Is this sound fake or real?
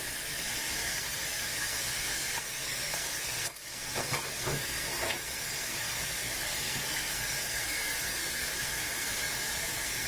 fake